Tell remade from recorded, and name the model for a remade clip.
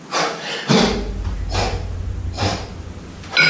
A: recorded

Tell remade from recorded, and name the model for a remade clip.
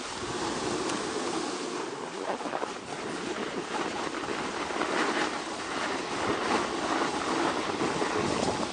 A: recorded